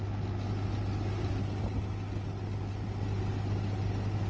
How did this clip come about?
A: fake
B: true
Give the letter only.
B